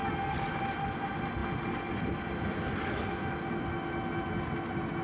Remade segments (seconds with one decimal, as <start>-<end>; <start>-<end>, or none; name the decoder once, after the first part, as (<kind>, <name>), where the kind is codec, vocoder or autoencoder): none